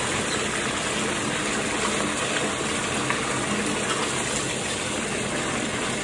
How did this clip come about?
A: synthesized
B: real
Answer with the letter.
B